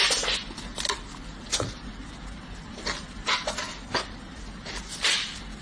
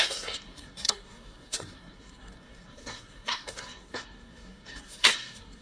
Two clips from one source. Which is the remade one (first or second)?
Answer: second